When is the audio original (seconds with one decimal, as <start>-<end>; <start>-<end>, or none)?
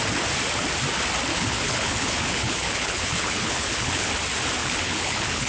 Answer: 0.0-1.3; 4.1-4.6